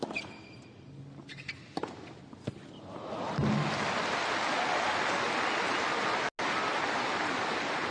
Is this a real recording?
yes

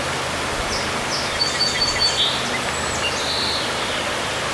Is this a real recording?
yes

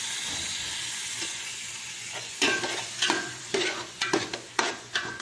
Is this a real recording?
no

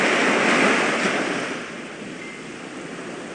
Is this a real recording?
yes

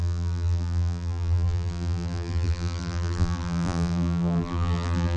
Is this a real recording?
no